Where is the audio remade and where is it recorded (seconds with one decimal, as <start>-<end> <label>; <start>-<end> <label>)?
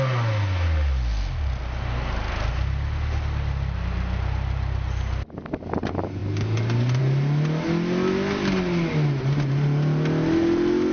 0.0-10.9 recorded